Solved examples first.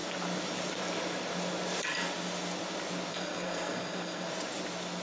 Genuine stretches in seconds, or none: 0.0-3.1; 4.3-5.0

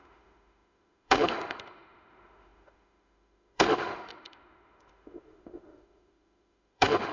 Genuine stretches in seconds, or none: none

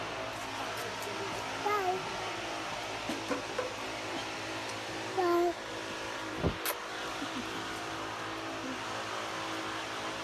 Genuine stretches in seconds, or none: 0.0-10.2

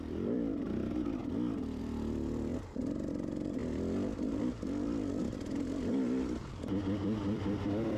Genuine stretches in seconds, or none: 1.2-1.8; 2.5-3.1; 3.6-4.5; 5.2-6.6

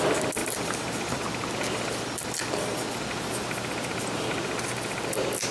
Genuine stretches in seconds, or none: 0.0-0.4; 3.1-5.5